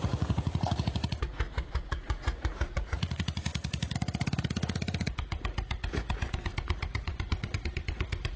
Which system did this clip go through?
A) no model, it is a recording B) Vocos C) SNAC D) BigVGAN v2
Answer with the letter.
B